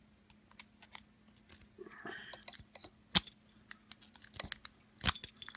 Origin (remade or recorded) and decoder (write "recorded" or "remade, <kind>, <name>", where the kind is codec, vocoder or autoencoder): recorded